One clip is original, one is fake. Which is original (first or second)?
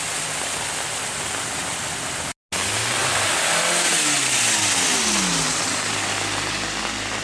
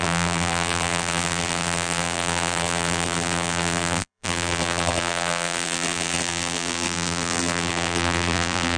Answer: first